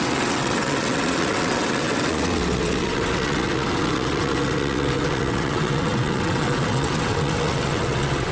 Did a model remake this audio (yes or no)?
yes